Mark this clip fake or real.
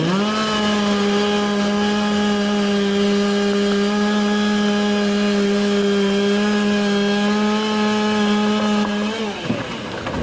real